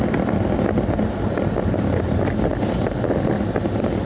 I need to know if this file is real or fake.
real